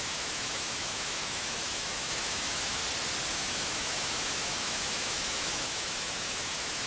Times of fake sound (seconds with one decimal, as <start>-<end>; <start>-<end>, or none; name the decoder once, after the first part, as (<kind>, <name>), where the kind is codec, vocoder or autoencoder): 0.0-2.8 (autoencoder, DAC-VAE); 3.3-6.9